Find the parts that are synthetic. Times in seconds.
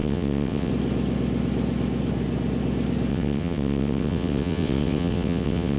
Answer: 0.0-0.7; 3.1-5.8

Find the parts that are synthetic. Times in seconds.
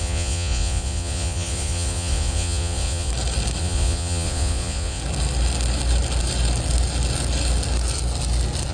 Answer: 0.0-3.1; 3.6-5.0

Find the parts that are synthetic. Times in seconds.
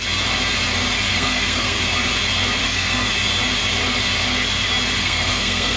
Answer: 1.1-1.8; 2.6-3.1; 5.0-5.8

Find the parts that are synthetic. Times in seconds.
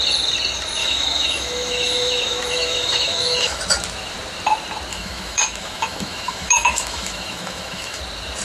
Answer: 0.8-3.6; 4.9-8.0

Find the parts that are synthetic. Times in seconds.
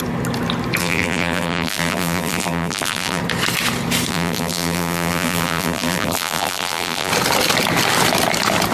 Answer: 0.8-3.2; 4.1-7.1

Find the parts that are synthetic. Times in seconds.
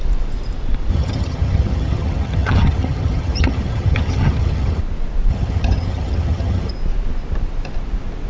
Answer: 0.9-4.8; 5.3-6.7